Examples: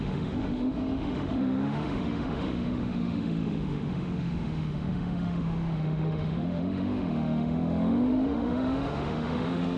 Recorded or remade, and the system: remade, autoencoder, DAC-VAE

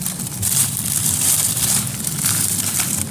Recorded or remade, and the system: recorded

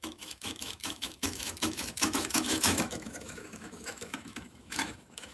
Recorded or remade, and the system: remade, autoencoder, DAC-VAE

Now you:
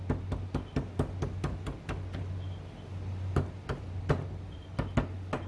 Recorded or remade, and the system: recorded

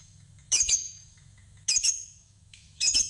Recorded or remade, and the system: remade, autoencoder, DAC-VAE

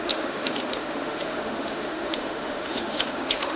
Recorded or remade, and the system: remade, autoencoder, DAC-VAE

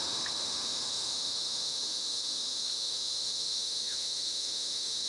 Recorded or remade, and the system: remade, autoencoder, DAC-VAE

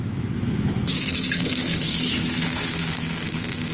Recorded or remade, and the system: remade, autoencoder, DAC-VAE